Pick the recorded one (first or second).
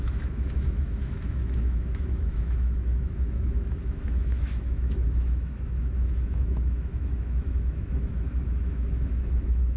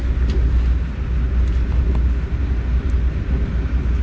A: second